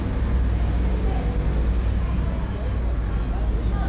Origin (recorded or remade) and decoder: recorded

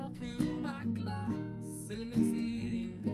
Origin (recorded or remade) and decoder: remade, codec, SNAC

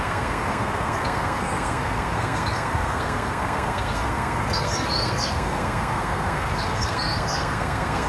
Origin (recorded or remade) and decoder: remade, codec, SNAC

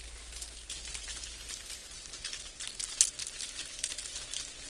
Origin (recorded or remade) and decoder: recorded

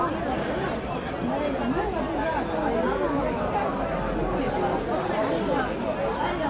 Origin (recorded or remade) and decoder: recorded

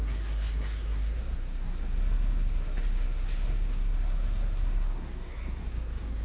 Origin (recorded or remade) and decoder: remade, codec, SNAC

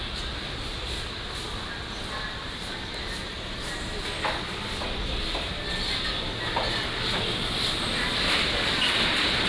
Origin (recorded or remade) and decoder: recorded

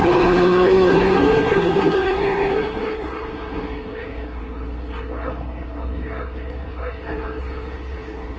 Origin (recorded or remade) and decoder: remade, codec, SNAC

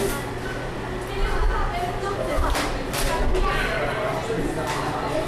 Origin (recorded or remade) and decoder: recorded